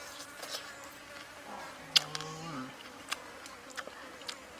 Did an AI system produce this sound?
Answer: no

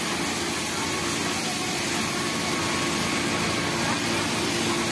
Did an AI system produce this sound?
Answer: no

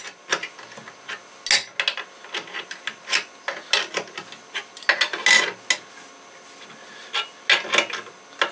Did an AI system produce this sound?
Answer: no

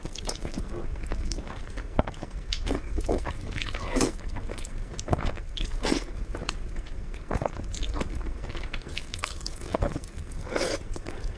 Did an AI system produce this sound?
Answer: yes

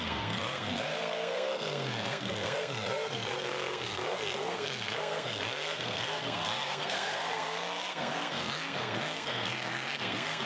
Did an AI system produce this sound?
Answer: yes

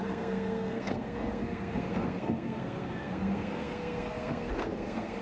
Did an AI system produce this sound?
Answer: yes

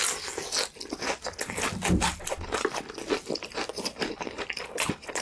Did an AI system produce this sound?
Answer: no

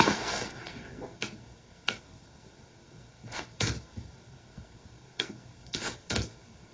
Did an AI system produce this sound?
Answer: yes